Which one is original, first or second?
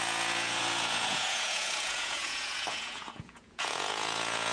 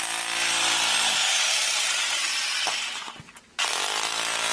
second